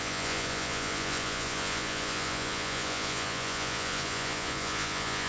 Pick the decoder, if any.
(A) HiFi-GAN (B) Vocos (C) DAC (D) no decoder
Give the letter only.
B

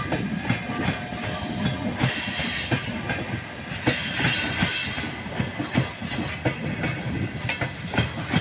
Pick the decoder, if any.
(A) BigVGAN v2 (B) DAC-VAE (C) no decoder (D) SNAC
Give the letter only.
C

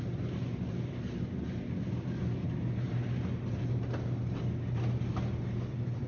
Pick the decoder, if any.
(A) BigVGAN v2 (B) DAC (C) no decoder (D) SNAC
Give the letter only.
C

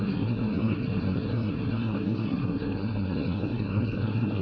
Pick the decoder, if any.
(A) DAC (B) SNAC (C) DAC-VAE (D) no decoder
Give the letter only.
B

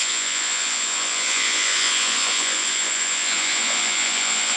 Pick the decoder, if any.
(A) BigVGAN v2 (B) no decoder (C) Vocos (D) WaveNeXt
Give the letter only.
C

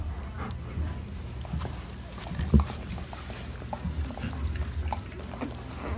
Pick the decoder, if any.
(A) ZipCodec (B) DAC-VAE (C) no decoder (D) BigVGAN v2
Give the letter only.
C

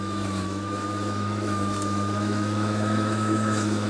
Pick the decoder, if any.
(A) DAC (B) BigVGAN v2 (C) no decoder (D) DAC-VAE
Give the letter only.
D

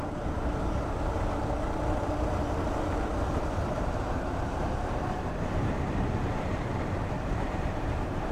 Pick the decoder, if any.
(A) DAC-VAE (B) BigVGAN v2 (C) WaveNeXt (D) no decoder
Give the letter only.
B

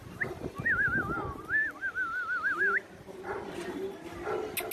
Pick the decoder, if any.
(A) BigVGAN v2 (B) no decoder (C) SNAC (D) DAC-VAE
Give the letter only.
B